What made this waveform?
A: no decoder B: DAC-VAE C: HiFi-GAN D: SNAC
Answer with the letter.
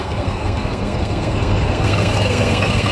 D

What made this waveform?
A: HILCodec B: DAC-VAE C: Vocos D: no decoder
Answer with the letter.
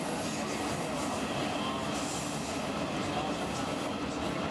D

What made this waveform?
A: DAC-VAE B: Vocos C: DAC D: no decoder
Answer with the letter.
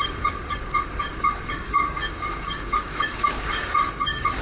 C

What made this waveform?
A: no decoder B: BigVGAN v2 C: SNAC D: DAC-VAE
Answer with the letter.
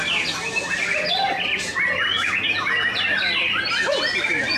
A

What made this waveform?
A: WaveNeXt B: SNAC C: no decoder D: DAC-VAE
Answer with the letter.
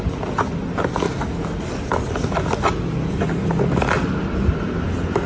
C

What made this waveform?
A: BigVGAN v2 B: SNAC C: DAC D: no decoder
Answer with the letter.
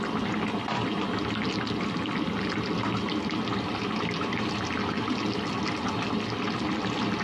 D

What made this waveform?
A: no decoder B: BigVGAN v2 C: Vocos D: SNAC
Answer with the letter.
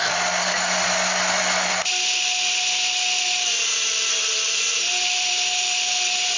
A